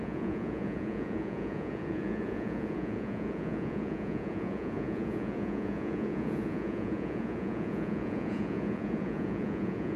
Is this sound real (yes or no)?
no